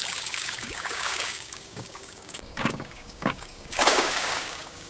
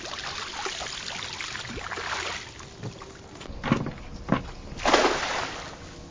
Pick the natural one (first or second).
second